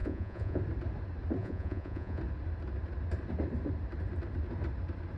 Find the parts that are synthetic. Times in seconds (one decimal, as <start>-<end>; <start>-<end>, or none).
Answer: 0.0-0.6; 1.4-2.2